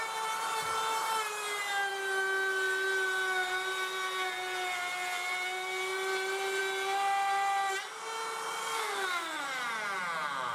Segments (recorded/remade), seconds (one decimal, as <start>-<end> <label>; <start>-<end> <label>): 0.0-8.6 recorded; 8.6-9.4 remade; 9.4-10.5 recorded